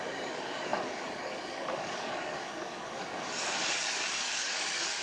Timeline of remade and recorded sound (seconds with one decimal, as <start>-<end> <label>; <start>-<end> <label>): 0.0-5.0 remade